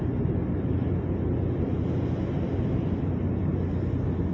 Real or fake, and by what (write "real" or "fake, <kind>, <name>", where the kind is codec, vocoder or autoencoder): real